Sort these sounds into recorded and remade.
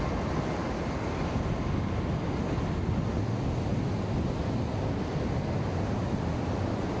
recorded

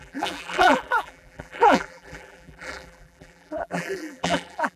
remade